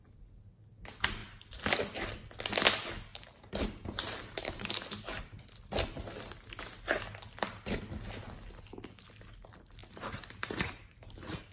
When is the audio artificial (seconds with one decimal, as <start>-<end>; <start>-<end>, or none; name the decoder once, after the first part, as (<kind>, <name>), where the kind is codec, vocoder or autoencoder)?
3.1-5.1 (vocoder, BigVGAN v2); 9.8-11.5